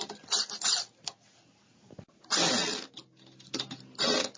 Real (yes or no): yes